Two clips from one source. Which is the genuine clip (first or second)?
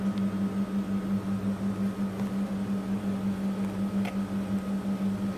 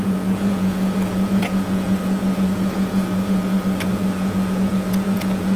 first